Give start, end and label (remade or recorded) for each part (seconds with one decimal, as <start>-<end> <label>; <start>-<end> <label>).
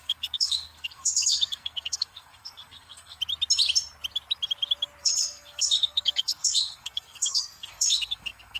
0.0-3.2 remade; 3.2-5.0 recorded; 5.0-8.6 remade